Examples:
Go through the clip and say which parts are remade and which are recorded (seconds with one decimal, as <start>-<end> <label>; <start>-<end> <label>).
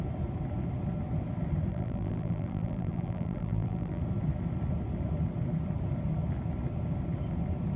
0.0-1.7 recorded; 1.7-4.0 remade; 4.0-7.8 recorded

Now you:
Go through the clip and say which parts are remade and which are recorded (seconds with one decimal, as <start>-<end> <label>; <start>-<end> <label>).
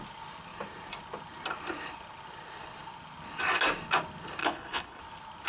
0.0-4.4 recorded; 4.4-5.0 remade; 5.0-5.5 recorded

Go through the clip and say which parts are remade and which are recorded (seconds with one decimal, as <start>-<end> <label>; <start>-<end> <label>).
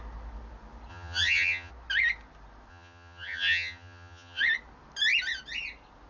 0.0-0.9 recorded; 0.9-1.7 remade; 1.7-2.7 recorded; 2.7-4.4 remade; 4.4-6.1 recorded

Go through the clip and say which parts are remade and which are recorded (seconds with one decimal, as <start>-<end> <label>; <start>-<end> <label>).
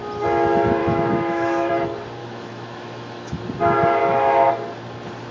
0.0-0.8 recorded; 0.8-1.7 remade; 1.7-2.2 recorded; 2.2-3.4 remade; 3.4-4.0 recorded; 4.0-4.5 remade; 4.5-5.3 recorded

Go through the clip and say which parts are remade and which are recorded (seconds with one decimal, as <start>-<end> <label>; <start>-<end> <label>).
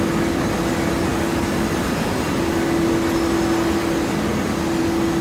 0.0-5.2 recorded